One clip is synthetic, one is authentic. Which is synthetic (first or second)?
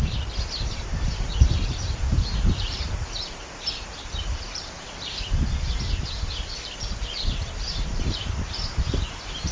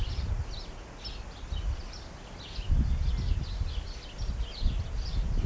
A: first